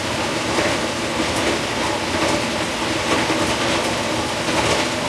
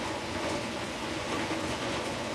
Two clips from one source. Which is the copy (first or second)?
second